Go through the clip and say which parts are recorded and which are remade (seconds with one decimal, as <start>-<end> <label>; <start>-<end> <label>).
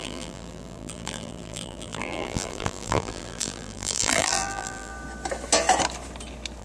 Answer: 0.0-4.9 remade; 4.9-6.6 recorded